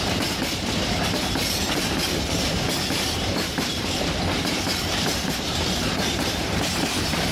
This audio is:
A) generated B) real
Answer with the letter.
A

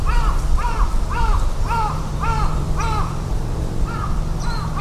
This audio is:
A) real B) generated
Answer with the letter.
B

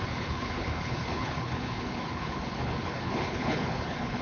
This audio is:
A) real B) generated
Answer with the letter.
B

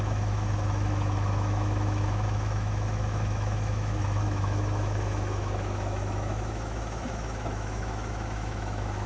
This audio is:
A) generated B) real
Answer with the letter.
A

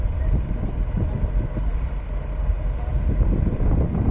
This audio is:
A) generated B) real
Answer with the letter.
B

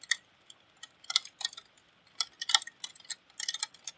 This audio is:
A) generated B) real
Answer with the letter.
B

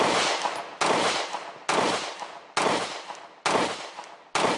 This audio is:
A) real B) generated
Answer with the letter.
A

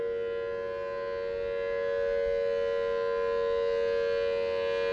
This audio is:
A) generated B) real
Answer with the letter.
B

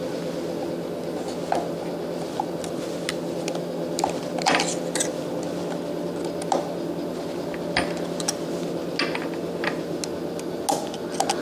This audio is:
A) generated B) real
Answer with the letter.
B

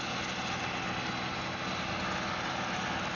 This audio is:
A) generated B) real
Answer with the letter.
B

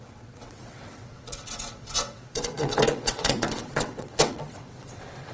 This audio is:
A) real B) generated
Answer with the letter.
B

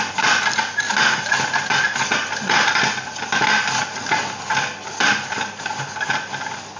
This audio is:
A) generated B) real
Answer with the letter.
B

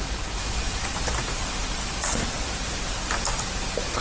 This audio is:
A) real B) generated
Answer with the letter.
A